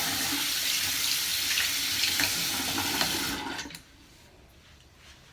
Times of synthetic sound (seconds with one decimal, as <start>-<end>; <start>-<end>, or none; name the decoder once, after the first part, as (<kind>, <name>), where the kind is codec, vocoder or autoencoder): none